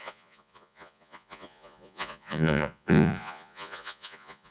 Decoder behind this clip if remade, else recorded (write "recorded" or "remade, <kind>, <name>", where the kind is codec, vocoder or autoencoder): remade, vocoder, Vocos